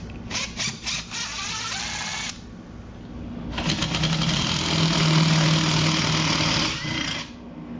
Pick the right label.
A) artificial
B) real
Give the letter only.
B